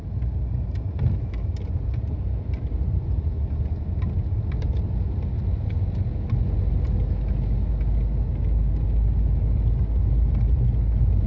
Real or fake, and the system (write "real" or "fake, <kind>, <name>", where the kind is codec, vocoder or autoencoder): real